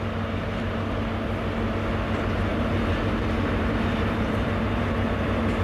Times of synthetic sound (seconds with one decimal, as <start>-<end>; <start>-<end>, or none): 2.5-5.1